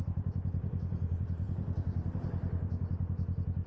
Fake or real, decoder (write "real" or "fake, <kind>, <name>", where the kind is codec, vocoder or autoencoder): fake, vocoder, BigVGAN v2